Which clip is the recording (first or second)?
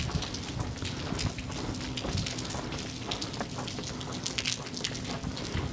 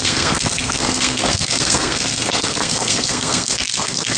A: first